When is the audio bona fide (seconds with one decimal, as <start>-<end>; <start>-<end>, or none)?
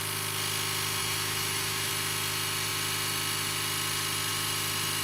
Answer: 0.0-1.0; 1.9-5.0